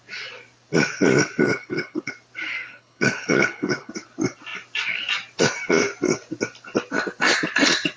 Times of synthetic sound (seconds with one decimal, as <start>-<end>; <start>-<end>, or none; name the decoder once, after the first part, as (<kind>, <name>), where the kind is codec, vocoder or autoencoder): 1.5-2.1 (codec, HILCodec); 2.6-3.9